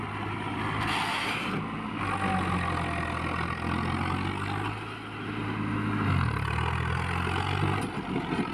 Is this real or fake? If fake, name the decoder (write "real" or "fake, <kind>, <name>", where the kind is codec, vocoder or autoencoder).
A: real